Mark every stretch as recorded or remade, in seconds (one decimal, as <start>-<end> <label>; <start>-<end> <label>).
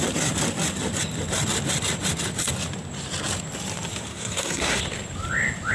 0.0-4.1 recorded; 4.1-4.8 remade; 4.8-5.7 recorded